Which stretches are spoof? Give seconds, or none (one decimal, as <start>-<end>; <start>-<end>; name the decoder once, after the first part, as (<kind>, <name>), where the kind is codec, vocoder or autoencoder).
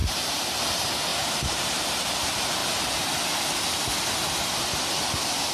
0.0-0.6 (vocoder, BigVGAN v2); 1.1-1.9